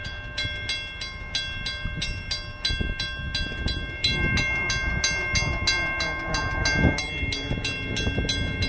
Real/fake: real